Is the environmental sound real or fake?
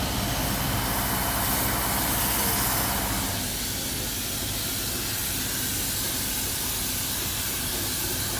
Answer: real